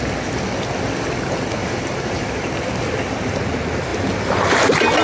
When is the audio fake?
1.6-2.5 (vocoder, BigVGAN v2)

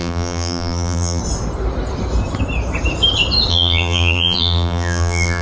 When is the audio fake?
0.0-1.2 (vocoder, BigVGAN v2); 3.5-5.4

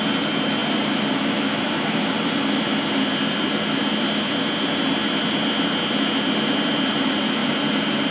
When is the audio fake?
none

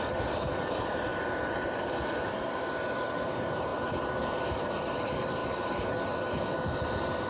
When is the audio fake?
0.0-1.1 (vocoder, BigVGAN v2); 2.0-5.4

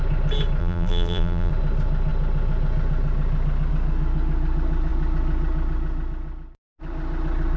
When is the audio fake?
0.6-1.5 (vocoder, BigVGAN v2)

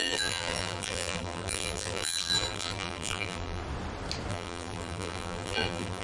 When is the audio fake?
0.0-3.6 (vocoder, BigVGAN v2); 4.3-6.0